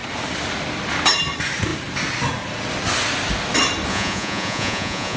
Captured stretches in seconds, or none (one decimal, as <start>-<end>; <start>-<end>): 0.0-3.9